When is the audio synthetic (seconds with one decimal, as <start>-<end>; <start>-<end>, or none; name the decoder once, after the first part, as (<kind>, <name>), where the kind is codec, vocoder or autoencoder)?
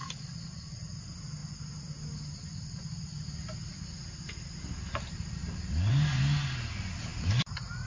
0.0-0.9 (vocoder, BigVGAN v2); 5.4-5.9; 7.1-7.9